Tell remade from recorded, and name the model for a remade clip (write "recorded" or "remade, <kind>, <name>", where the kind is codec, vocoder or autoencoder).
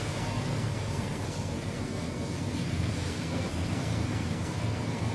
remade, codec, SNAC